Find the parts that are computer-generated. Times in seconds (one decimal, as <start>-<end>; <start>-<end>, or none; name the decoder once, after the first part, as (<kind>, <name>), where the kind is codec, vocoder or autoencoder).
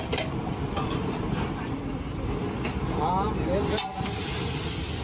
0.0-1.8 (vocoder, BigVGAN v2); 4.0-5.0